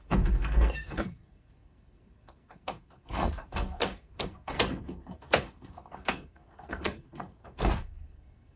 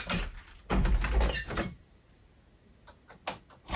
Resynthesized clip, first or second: first